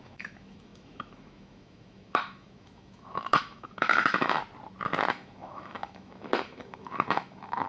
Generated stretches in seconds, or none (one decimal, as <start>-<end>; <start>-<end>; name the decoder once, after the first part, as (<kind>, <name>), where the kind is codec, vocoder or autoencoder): 0.0-4.4 (autoencoder, DAC-VAE); 5.1-7.7

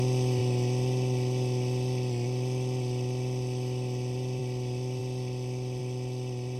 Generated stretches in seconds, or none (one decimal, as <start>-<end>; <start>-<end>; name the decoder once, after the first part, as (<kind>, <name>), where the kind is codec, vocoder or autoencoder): none